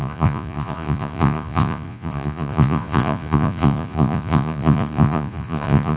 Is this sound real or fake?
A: fake